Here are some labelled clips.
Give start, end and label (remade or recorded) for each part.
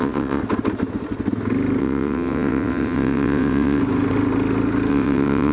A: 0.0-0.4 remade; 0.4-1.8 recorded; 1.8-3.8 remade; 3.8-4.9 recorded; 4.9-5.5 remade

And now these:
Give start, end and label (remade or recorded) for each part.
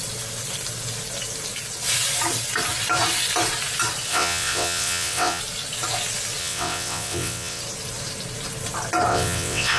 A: 0.0-4.1 recorded; 4.1-5.4 remade; 5.4-6.4 recorded; 6.4-7.6 remade; 7.6-9.1 recorded; 9.1-9.8 remade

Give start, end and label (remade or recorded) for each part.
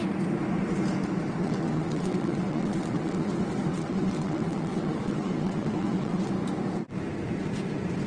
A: 0.0-1.4 recorded; 1.4-3.3 remade; 3.3-3.7 recorded; 3.7-6.3 remade; 6.3-8.1 recorded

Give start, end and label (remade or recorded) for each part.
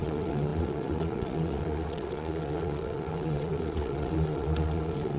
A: 0.0-5.2 remade